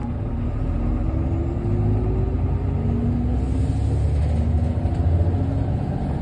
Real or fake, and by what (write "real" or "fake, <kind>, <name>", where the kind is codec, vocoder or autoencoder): real